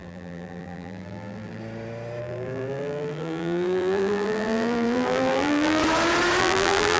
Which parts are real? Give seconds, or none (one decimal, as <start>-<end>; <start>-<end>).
1.6-2.2; 5.8-6.4

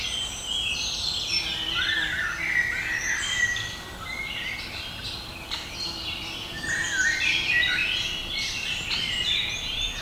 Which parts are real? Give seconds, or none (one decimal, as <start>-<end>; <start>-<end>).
0.0-10.0